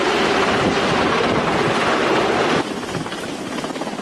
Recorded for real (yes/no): yes